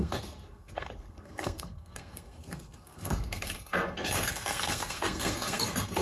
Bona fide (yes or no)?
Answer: no